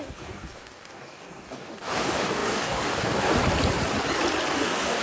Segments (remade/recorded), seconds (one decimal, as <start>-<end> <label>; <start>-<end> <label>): 0.0-3.4 remade; 3.4-4.5 recorded; 4.5-5.0 remade